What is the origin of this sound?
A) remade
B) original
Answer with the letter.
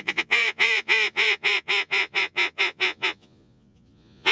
A